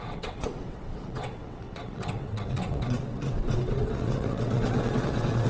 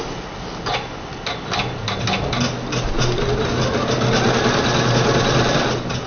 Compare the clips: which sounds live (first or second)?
second